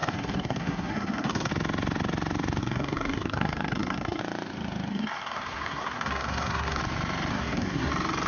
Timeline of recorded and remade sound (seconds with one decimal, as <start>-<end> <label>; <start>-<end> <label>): 0.0-1.5 remade; 1.5-2.6 recorded; 2.6-4.2 remade; 4.2-4.9 recorded; 4.9-6.8 remade; 6.8-7.3 recorded; 7.3-7.9 remade; 7.9-8.3 recorded